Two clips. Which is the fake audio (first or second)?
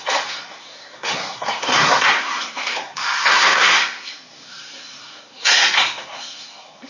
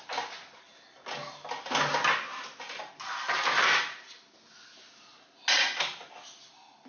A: first